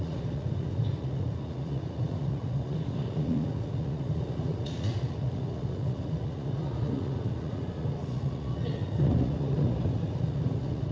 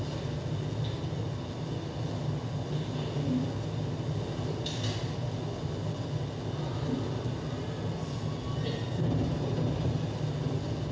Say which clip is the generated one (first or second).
first